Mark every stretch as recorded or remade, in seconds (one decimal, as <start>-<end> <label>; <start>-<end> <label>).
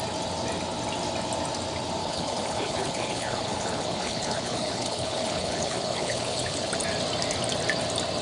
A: 0.0-2.0 recorded; 2.0-6.7 remade; 6.7-8.2 recorded